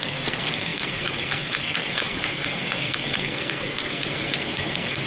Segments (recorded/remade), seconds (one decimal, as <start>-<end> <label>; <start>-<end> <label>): 0.0-5.1 remade